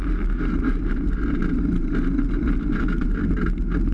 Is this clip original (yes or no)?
yes